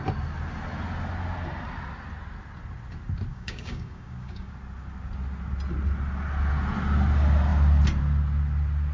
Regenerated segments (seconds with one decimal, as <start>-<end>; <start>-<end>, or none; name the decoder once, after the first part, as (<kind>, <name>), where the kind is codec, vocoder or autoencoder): 3.3-4.5 (codec, DAC)

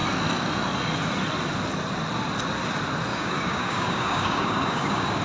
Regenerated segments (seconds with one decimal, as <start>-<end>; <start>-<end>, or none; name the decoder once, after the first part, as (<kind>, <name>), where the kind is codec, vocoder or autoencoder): 3.1-5.2 (codec, DAC)

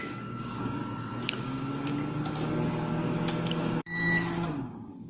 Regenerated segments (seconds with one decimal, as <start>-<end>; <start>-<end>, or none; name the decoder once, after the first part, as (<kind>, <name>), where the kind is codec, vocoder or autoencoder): 0.0-0.8 (codec, DAC); 1.4-5.1

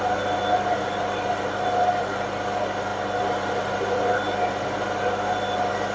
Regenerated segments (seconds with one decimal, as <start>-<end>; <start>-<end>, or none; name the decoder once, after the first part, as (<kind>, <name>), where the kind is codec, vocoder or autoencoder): none

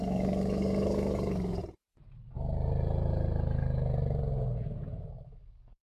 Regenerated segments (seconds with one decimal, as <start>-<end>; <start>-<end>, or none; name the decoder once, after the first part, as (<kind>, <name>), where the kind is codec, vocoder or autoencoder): 0.0-1.6 (codec, DAC); 5.1-5.9